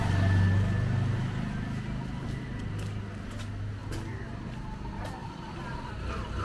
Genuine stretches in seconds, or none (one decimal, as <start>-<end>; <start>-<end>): 0.0-6.4